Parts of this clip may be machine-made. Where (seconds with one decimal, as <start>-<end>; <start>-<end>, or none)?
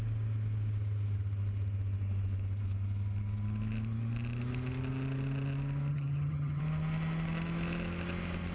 5.9-6.6